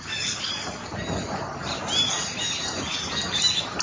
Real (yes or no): yes